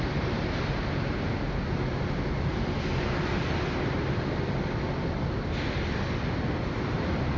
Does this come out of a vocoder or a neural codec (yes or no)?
no